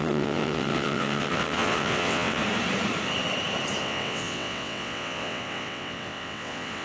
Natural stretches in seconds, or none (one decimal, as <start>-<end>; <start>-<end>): 2.4-3.8